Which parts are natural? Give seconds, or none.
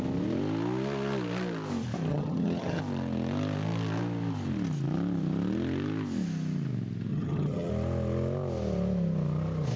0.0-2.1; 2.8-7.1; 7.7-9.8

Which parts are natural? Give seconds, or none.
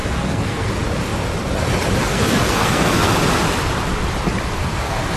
0.7-2.0; 3.1-4.6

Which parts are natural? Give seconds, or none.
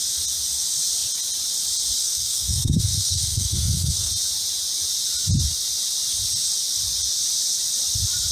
0.0-2.0; 4.1-8.3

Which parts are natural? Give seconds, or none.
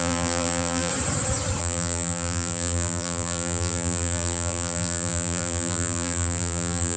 0.9-1.6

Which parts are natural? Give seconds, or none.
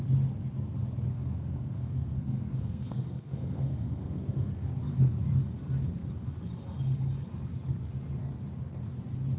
0.0-1.1; 4.5-9.4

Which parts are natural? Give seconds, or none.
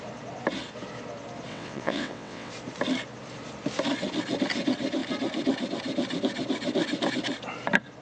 0.0-1.5; 2.5-8.0